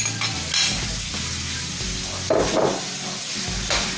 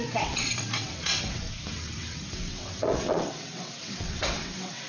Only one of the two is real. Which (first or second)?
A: first